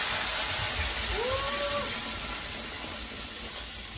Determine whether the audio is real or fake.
real